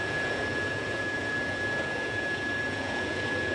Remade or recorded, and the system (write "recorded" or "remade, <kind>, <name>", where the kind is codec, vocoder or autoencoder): remade, vocoder, Vocos